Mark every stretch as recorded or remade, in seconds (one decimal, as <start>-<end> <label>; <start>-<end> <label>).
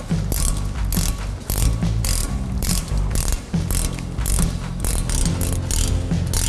0.0-2.2 recorded; 2.2-2.9 remade; 2.9-6.5 recorded